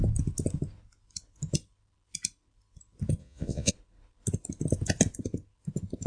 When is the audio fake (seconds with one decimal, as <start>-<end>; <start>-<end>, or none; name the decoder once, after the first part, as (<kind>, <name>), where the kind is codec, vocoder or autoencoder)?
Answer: 3.2-3.7 (vocoder, Vocos)

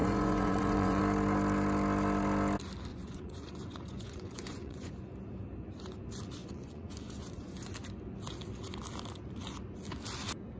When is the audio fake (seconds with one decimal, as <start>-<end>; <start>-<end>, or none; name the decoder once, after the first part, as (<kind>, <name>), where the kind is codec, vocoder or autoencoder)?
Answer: 0.0-1.0 (vocoder, Vocos); 2.9-4.9; 6.4-7.7

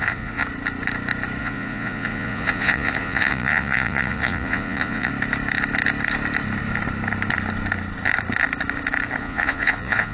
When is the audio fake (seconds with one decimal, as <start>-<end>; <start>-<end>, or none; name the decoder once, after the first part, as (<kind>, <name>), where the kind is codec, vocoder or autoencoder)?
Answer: 0.0-0.4 (vocoder, Vocos); 1.4-5.1; 9.2-10.1

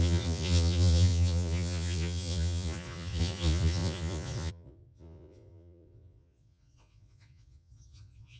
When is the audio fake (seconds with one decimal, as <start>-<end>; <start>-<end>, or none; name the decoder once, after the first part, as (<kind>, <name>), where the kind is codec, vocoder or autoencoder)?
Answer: 0.0-8.4 (vocoder, Vocos)

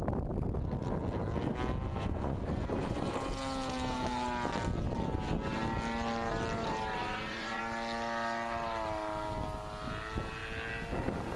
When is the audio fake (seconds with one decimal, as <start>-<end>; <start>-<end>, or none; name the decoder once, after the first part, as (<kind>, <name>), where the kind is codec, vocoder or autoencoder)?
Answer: 1.9-3.1 (vocoder, Vocos); 7.0-7.6